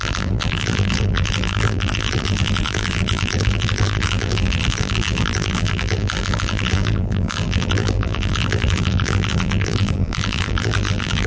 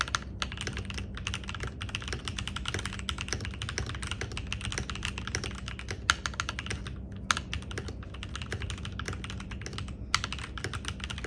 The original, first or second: second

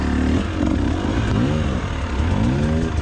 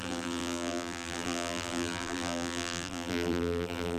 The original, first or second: first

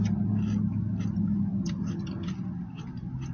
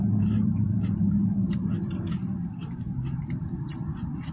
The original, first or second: first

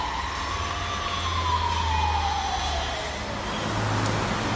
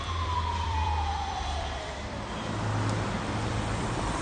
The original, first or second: first